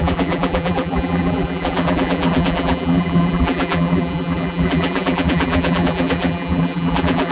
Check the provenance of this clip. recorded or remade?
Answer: remade